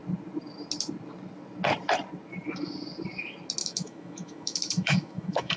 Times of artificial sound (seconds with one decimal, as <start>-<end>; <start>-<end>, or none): 3.6-5.6